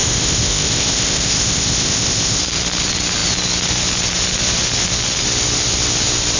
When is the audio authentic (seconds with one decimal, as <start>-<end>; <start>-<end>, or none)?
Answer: 2.4-6.4